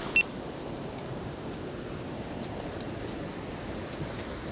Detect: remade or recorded recorded